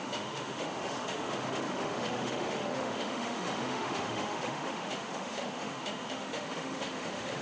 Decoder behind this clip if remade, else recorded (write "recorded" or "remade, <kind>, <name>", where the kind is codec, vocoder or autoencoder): remade, autoencoder, DAC-VAE